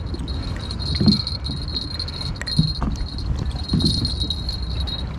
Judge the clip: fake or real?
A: real